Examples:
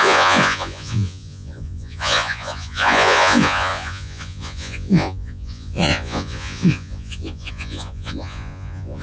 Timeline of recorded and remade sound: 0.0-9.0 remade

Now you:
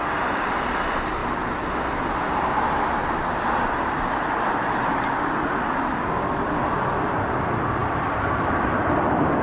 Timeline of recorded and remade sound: 0.0-1.2 recorded; 1.2-1.7 remade; 1.7-7.8 recorded; 7.8-9.4 remade

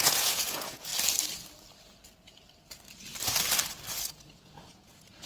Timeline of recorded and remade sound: 0.0-0.9 remade; 0.9-4.1 recorded; 4.1-5.3 remade

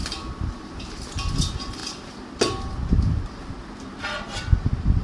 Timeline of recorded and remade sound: 0.0-5.0 recorded

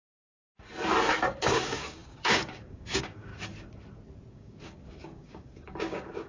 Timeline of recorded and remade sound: 0.0-0.4 remade; 0.4-1.4 recorded; 1.4-3.3 remade; 3.3-4.3 recorded; 4.3-6.3 remade

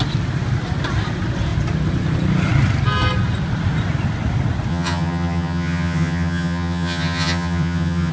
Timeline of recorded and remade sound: 0.0-4.7 recorded; 4.7-8.1 remade

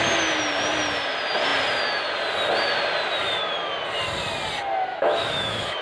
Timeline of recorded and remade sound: 0.0-4.9 recorded; 4.9-5.8 remade